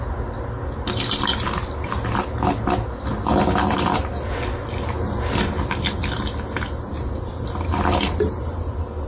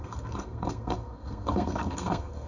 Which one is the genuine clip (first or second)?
first